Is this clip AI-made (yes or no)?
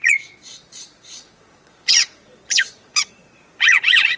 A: yes